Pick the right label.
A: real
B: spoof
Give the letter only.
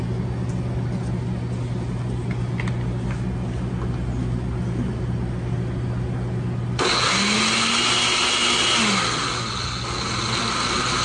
A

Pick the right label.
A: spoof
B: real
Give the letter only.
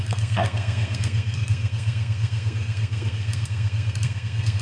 A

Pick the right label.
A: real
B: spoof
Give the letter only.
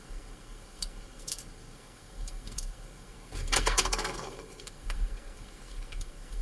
B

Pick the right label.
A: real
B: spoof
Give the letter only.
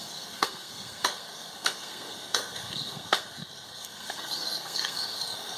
B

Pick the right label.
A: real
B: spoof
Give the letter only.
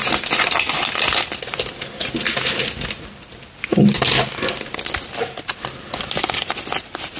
A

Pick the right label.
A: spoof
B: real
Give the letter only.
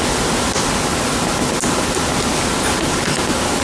B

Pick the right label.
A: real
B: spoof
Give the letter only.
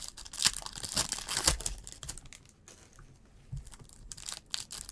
A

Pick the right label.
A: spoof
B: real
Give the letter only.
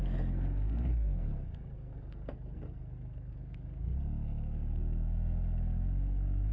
A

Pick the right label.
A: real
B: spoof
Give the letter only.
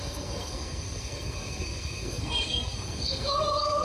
B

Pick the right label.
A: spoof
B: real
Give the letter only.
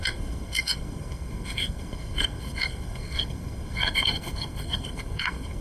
A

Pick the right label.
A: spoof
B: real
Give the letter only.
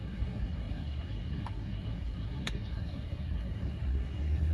A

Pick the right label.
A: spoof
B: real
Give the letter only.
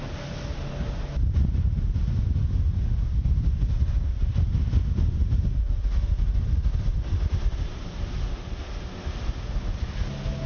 B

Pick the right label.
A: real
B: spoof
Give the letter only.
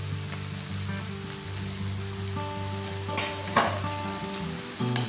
A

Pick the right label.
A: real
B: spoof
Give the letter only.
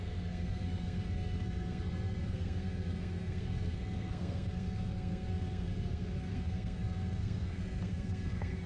B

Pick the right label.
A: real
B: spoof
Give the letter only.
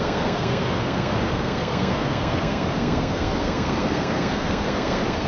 B